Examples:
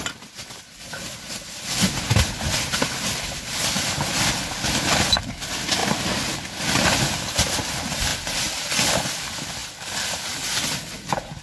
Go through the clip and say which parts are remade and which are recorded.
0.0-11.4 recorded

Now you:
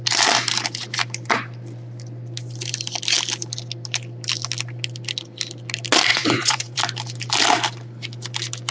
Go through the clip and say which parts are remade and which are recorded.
0.0-6.1 recorded; 6.1-6.8 remade; 6.8-8.7 recorded

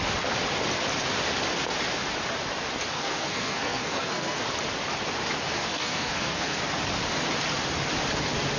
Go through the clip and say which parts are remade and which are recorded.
0.0-2.9 recorded; 2.9-4.4 remade; 4.4-5.7 recorded; 5.7-6.6 remade; 6.6-8.6 recorded

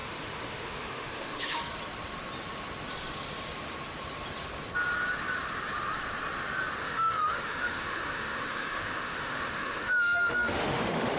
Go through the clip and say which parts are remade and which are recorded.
0.0-1.6 remade; 1.6-6.8 recorded; 6.8-11.2 remade